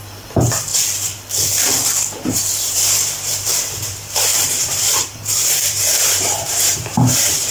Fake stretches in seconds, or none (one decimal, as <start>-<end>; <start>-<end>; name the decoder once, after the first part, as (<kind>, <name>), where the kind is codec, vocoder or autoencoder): 0.0-0.7 (vocoder, BigVGAN v2); 2.3-7.5